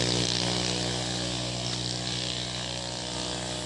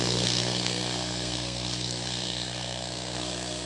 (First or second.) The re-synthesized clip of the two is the second